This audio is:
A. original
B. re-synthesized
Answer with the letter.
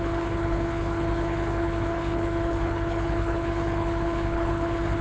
B